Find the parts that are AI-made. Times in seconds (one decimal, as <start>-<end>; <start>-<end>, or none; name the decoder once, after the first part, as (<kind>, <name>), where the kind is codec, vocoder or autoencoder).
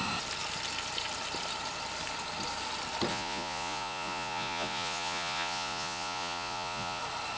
3.1-7.0 (vocoder, Vocos)